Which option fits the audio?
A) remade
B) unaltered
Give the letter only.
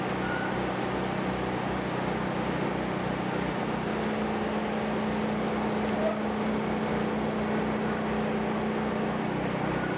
B